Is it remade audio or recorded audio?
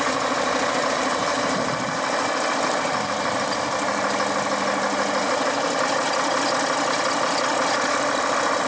recorded